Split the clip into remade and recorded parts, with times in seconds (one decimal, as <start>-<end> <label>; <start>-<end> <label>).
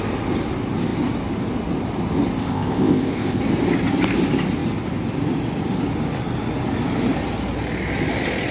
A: 0.0-2.4 recorded; 2.4-3.4 remade; 3.4-8.5 recorded